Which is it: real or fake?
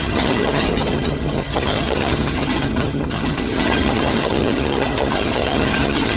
fake